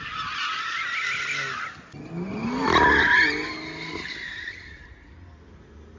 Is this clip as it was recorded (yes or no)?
yes